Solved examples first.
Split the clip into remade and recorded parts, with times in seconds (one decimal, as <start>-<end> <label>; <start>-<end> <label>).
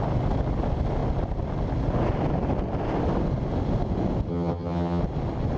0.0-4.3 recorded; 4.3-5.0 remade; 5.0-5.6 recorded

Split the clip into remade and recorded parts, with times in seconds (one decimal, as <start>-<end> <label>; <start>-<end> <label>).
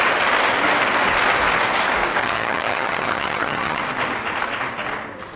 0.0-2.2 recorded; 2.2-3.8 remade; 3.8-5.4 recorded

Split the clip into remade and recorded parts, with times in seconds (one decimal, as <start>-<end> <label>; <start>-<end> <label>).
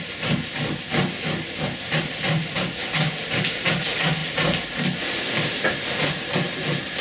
0.0-7.0 recorded